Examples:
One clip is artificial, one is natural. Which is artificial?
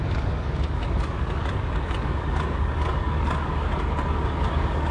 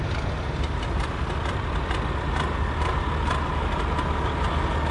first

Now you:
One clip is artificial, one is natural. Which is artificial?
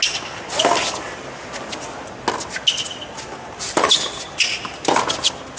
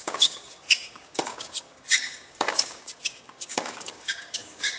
second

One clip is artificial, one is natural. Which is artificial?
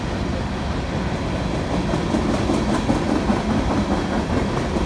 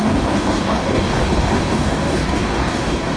second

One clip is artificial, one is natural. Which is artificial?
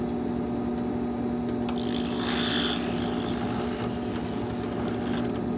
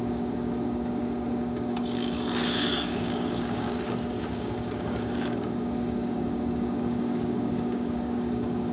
second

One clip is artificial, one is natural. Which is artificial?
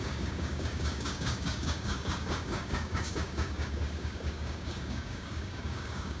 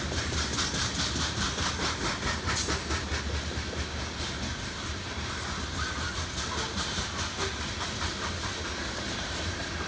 first